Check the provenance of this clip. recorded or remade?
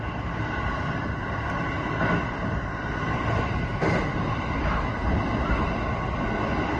recorded